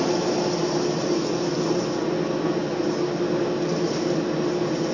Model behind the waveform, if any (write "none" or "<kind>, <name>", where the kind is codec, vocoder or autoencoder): none